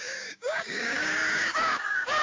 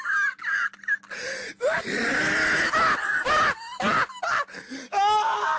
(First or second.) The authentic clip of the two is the second